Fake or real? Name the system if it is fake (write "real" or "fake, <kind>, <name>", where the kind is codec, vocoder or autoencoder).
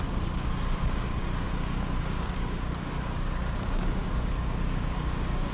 fake, codec, DAC